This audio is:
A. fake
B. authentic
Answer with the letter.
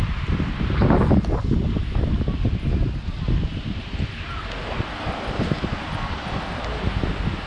B